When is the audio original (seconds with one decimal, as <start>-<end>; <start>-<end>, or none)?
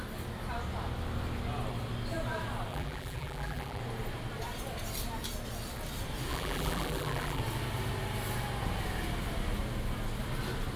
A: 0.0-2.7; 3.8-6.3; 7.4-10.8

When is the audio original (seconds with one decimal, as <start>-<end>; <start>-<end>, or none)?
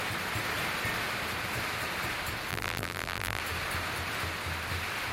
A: 0.0-2.5; 3.4-5.1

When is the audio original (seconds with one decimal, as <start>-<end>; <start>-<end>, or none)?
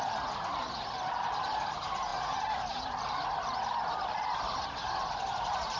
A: 0.0-5.8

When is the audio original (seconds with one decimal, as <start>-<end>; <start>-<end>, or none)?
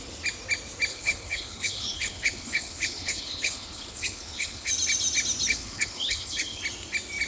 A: 0.0-0.9; 4.7-5.5; 6.6-7.3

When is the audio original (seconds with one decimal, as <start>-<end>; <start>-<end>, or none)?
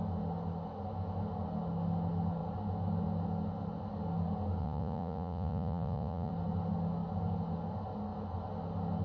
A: 0.0-4.6; 6.3-9.0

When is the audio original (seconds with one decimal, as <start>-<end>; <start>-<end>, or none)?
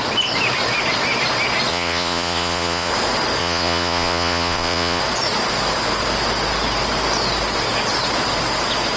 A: 0.0-1.7; 2.9-3.4; 5.0-9.0